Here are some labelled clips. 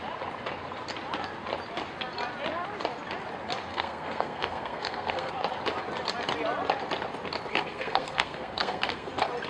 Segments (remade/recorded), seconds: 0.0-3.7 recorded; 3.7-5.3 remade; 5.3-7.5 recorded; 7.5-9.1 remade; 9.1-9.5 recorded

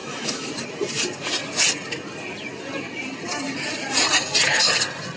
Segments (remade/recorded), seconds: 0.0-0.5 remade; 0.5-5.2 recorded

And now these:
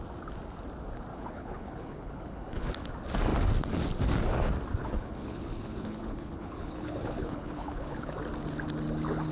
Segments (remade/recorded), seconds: 0.0-1.1 recorded; 1.1-2.9 remade; 2.9-4.8 recorded; 4.8-8.1 remade; 8.1-9.3 recorded

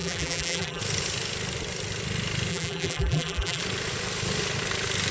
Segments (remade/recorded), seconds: 0.0-0.8 remade; 0.8-2.5 recorded; 2.5-3.6 remade; 3.6-5.1 recorded